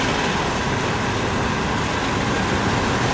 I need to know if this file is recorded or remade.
recorded